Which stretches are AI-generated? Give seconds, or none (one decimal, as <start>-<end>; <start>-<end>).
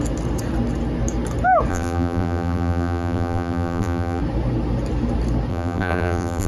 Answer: 1.7-4.2; 5.5-6.5